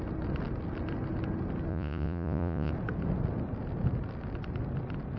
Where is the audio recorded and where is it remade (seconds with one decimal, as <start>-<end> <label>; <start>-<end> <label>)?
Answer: 0.0-1.7 recorded; 1.7-2.7 remade; 2.7-5.2 recorded